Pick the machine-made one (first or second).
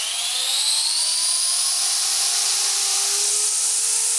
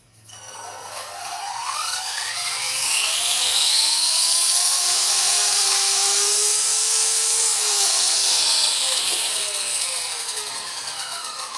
second